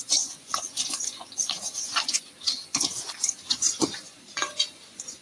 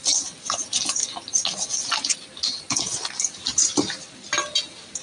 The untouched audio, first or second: second